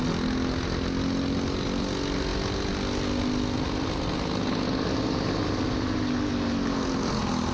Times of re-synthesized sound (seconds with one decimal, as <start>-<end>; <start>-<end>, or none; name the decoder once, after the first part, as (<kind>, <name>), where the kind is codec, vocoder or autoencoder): none